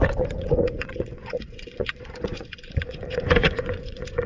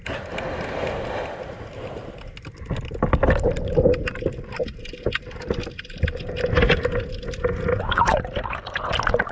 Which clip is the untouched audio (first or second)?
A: second